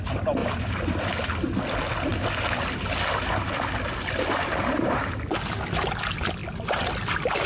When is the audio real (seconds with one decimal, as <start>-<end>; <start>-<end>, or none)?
0.0-0.4; 1.0-4.0; 5.0-7.5